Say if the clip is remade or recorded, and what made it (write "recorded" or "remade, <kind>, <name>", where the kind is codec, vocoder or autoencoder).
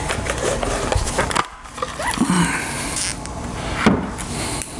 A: recorded